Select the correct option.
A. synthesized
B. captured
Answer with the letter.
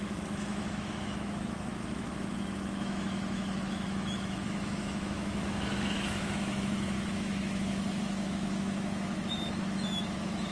A